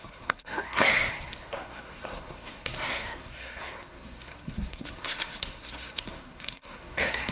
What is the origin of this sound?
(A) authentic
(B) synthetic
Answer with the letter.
B